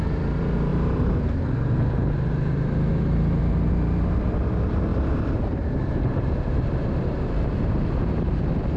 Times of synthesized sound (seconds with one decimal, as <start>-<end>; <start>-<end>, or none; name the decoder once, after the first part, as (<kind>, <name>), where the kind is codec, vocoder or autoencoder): 0.7-3.4 (vocoder, BigVGAN v2); 4.9-8.4